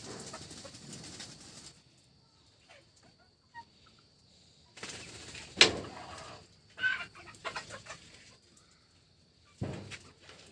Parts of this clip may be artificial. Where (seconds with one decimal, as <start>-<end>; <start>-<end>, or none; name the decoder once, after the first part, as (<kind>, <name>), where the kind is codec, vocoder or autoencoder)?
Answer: 7.4-9.6 (vocoder, BigVGAN v2)